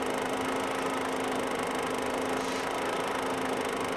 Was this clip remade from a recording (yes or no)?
no